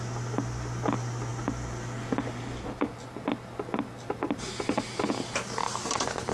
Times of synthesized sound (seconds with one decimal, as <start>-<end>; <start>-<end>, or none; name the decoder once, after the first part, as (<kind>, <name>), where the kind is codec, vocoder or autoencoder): none